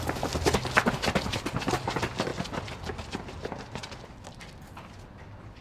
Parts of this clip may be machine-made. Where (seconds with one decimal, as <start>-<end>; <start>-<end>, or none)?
none